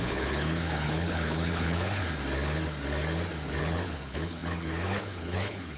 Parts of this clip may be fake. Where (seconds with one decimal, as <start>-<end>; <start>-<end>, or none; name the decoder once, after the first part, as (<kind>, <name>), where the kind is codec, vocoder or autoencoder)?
0.0-2.0 (codec, HILCodec); 3.6-5.8